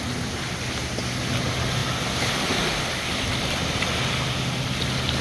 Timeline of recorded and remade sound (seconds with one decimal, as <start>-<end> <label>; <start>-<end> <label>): 0.0-5.2 recorded